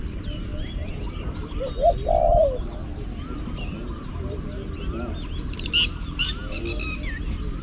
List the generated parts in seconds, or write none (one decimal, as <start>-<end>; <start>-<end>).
none